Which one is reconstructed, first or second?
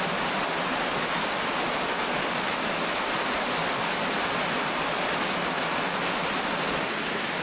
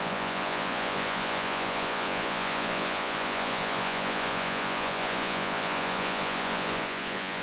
second